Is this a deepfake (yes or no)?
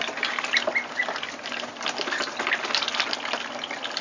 no